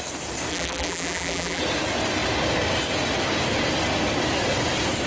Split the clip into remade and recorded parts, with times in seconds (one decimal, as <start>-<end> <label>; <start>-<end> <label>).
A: 0.0-0.5 recorded; 0.5-1.6 remade; 1.6-5.1 recorded